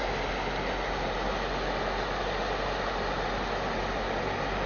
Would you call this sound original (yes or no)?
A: yes